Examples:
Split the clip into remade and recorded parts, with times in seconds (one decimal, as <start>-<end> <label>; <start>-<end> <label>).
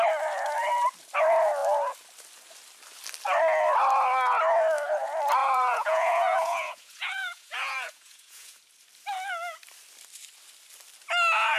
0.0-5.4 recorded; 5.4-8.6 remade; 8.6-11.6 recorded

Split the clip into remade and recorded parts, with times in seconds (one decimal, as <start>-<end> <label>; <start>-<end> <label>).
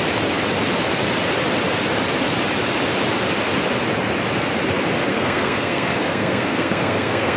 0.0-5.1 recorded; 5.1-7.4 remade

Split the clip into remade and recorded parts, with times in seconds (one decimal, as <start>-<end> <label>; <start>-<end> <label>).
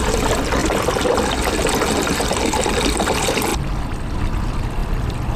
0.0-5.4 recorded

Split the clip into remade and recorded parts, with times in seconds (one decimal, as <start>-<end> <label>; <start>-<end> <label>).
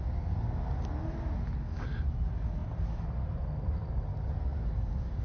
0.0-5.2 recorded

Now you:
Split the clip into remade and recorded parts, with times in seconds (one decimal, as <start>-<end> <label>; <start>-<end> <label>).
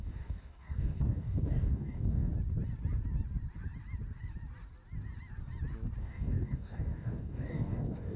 0.0-2.3 remade; 2.3-6.0 recorded; 6.0-8.2 remade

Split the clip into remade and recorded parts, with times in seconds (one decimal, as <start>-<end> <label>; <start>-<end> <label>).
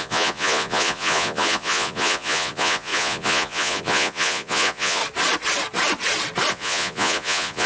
0.0-5.0 remade; 5.0-6.5 recorded; 6.5-7.7 remade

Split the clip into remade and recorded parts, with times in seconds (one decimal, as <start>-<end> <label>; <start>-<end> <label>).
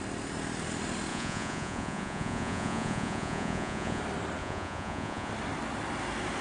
0.0-1.1 recorded; 1.1-4.0 remade; 4.0-4.4 recorded; 4.4-5.3 remade; 5.3-6.4 recorded